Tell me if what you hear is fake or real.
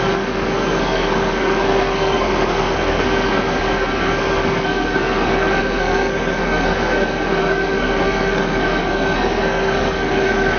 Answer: fake